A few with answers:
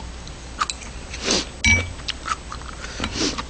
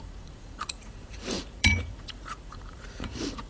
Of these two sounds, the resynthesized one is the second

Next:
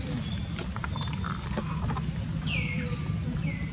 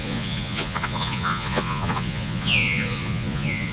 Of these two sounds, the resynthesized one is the second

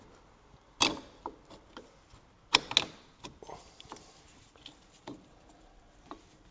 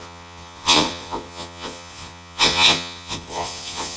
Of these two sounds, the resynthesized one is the second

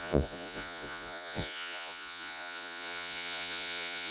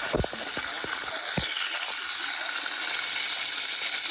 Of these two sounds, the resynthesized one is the first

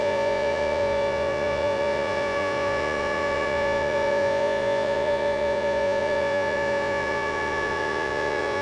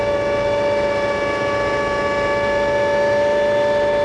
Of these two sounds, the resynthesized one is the first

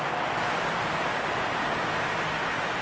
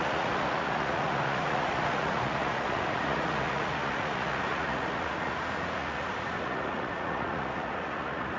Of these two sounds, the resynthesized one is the second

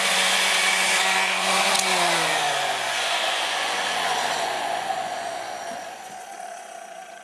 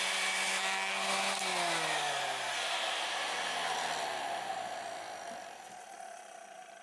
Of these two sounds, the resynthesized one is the first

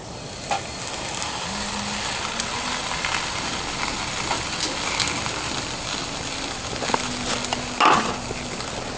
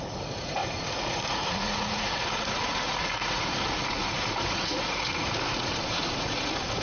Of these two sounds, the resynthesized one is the second